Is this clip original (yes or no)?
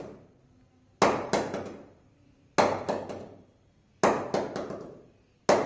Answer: yes